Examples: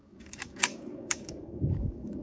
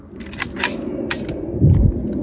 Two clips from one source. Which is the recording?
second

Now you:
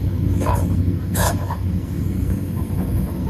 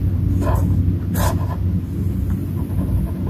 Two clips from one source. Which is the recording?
second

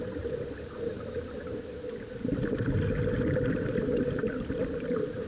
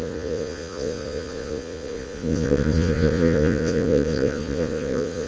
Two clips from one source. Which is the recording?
first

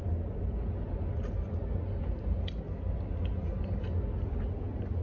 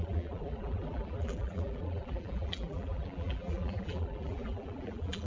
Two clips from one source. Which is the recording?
first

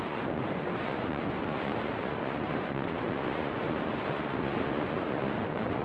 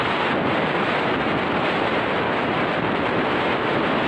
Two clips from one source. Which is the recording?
second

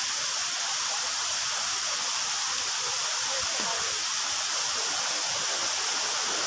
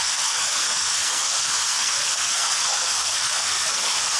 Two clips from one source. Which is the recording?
first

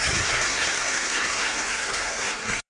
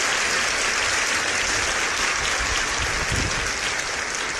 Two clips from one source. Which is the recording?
second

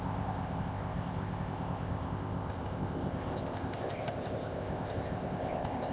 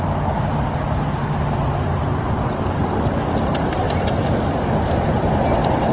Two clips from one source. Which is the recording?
second